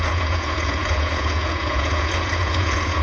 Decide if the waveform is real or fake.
fake